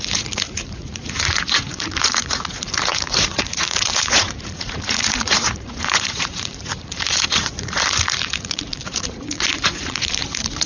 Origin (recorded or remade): remade